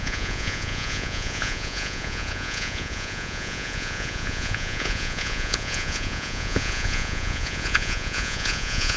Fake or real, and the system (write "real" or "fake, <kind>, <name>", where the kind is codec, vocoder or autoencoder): fake, vocoder, Vocos